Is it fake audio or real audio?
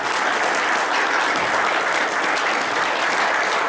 real